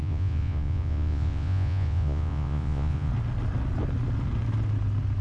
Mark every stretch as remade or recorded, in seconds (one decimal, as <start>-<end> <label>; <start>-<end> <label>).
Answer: 0.0-3.1 remade; 3.1-5.2 recorded